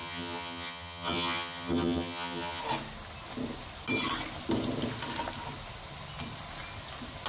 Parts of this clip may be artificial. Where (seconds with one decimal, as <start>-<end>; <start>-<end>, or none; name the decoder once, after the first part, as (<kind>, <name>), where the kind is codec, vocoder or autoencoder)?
0.0-2.6 (vocoder, HiFi-GAN)